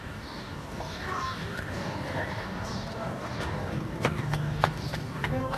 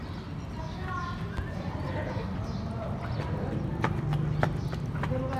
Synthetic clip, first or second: first